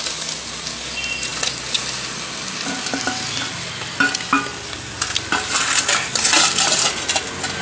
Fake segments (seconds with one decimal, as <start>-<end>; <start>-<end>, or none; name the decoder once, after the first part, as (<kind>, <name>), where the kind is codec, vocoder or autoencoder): none